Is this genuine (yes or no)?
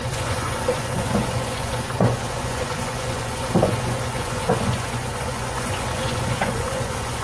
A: no